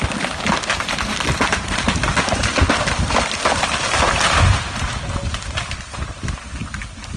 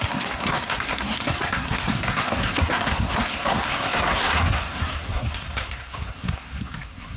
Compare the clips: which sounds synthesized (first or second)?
second